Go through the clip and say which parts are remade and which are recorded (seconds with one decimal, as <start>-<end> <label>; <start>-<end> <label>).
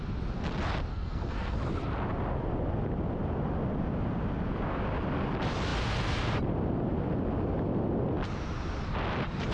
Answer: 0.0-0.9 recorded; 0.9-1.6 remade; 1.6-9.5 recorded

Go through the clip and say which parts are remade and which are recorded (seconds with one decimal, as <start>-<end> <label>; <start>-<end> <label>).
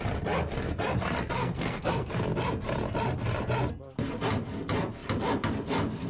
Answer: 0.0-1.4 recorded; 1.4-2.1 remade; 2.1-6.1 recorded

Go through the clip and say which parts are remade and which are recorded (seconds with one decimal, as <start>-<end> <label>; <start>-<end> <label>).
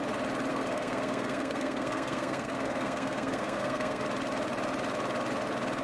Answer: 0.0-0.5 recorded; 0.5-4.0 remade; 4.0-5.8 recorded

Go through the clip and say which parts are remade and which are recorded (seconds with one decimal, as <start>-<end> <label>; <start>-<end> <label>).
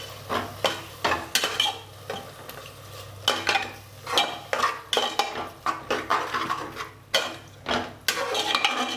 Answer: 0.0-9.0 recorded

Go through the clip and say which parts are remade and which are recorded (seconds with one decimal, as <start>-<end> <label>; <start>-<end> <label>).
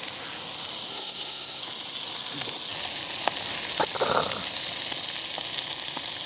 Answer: 0.0-0.9 recorded; 0.9-1.6 remade; 1.6-6.3 recorded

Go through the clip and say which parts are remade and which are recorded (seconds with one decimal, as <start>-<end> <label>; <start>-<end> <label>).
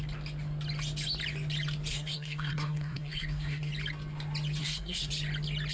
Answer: 0.0-1.9 recorded; 1.9-3.7 remade; 3.7-4.6 recorded; 4.6-5.1 remade; 5.1-5.7 recorded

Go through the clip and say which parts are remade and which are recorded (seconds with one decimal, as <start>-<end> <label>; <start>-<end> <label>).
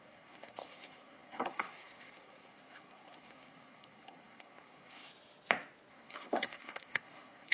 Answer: 0.0-5.1 remade; 5.1-5.9 recorded; 5.9-7.5 remade